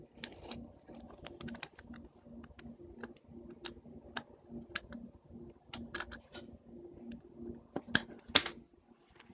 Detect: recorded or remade recorded